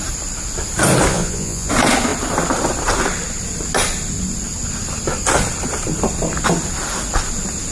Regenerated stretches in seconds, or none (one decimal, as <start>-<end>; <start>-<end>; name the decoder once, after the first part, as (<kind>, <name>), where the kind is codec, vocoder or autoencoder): 1.1-1.7 (vocoder, Vocos)